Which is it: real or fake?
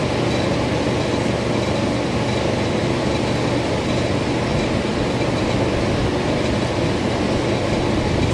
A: real